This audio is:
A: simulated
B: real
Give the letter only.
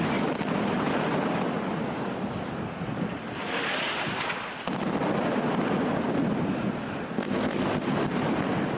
B